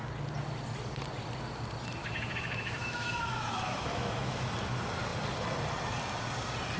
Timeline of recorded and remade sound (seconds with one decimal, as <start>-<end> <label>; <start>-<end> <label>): 0.0-2.0 recorded; 2.0-4.4 remade; 4.4-6.8 recorded